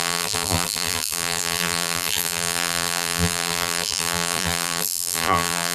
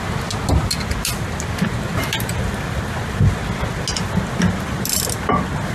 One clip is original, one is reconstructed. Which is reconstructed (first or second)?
first